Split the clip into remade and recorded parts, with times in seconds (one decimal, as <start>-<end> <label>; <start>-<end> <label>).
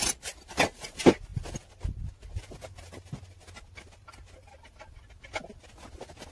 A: 0.0-6.3 recorded